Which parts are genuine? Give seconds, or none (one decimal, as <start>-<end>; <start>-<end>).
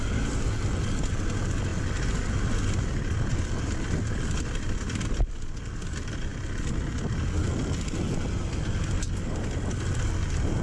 0.0-10.6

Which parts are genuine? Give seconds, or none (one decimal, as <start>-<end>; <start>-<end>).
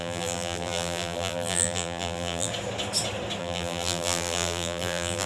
2.5-3.4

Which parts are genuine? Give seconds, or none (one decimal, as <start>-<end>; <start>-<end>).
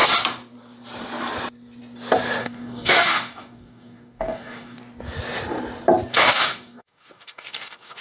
0.0-2.4; 4.8-6.1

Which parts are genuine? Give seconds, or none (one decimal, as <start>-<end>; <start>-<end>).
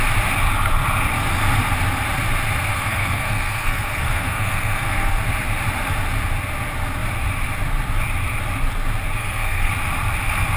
0.0-2.7; 5.2-9.2; 9.7-10.6